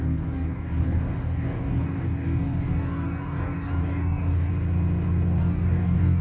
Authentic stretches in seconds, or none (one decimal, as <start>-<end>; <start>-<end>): 4.5-5.4